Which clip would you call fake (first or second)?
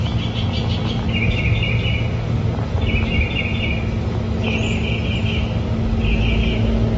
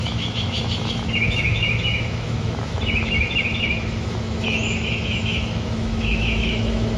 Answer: second